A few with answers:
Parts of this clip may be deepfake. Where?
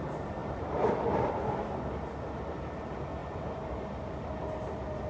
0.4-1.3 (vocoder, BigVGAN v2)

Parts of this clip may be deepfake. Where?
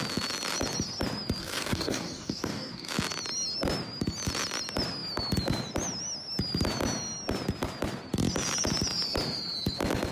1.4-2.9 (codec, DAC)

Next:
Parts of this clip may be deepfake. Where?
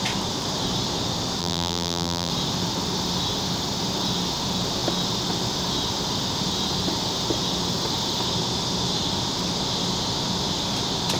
1.4-2.3 (vocoder, BigVGAN v2)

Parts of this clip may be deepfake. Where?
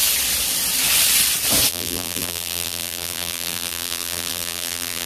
1.7-5.1 (vocoder, BigVGAN v2)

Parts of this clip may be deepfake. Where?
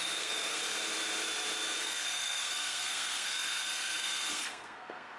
0.0-0.6 (codec, SNAC); 1.8-5.2